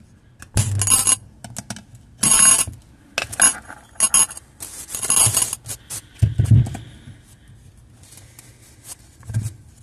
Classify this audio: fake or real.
real